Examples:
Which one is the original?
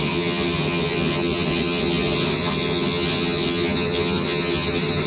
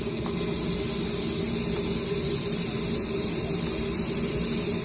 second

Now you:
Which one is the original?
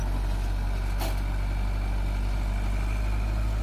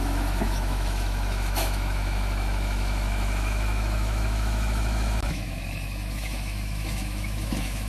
first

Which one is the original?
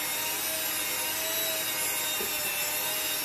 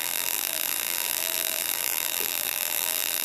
first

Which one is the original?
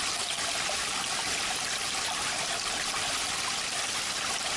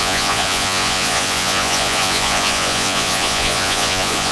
first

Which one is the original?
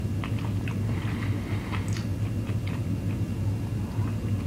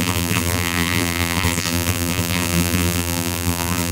first